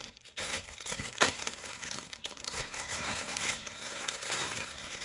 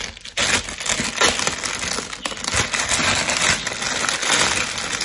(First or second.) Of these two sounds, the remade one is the first